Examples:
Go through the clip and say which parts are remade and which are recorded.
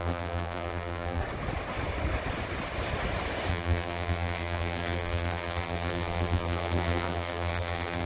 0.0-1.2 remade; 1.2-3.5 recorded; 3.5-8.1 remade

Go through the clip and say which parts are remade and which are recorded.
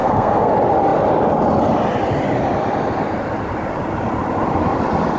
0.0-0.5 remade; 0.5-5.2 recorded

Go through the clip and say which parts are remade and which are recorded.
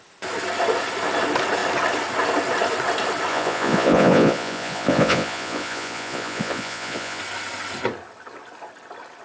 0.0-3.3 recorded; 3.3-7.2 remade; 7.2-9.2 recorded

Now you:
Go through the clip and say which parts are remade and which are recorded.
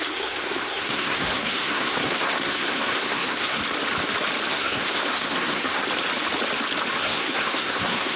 0.0-3.6 remade; 3.6-4.5 recorded; 4.5-5.8 remade; 5.8-7.0 recorded; 7.0-8.2 remade